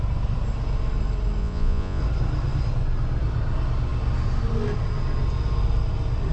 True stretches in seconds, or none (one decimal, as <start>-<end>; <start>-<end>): 0.0-1.4; 2.0-6.3